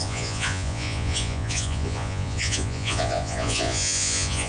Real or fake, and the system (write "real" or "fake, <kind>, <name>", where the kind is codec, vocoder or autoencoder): fake, vocoder, Vocos